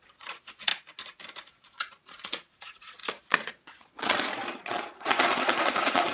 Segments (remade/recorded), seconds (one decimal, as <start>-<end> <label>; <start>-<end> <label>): 0.0-0.7 remade; 0.7-1.5 recorded; 1.5-6.1 remade